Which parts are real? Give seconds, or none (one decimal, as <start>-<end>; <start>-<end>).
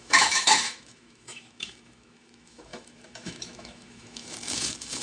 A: none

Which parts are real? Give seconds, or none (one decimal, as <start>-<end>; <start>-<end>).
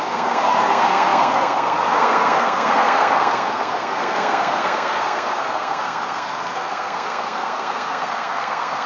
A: none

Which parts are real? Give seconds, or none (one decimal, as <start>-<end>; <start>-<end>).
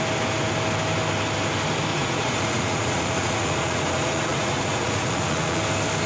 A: 0.0-1.9; 5.6-6.1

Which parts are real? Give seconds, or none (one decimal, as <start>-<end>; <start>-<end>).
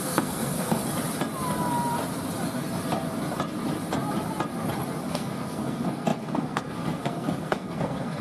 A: 0.8-5.1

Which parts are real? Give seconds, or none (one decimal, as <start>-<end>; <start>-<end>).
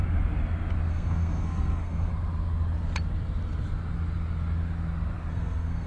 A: 0.0-0.9; 2.1-5.3